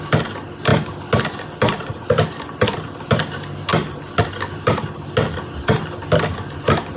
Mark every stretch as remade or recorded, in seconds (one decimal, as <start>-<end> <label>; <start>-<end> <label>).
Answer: 0.0-7.0 recorded